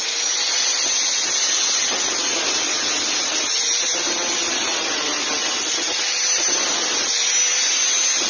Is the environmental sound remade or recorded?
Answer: recorded